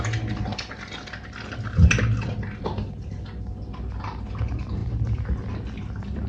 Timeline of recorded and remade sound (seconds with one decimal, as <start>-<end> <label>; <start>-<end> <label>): 0.0-6.3 recorded